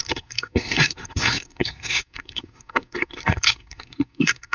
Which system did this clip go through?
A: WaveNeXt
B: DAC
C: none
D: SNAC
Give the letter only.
D